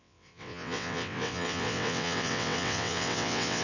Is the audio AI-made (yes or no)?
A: yes